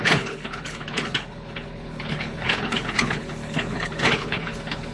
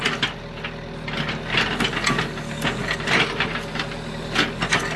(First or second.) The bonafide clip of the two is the second